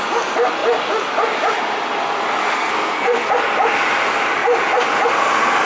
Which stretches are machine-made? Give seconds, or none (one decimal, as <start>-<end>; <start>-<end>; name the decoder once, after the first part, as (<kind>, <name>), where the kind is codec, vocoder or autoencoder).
2.4-3.3 (codec, SNAC)